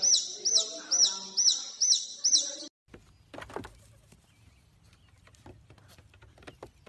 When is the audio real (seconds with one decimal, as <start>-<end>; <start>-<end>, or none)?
0.0-6.9